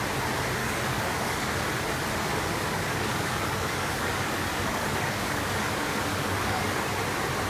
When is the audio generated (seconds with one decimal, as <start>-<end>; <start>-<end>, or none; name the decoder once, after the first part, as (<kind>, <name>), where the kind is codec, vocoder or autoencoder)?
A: 0.6-1.7 (codec, DAC); 2.3-6.8